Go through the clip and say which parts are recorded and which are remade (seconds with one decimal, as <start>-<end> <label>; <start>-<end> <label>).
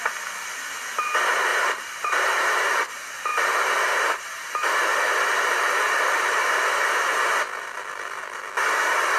0.0-1.5 recorded; 1.5-2.8 remade; 2.8-3.3 recorded; 3.3-7.0 remade; 7.0-9.2 recorded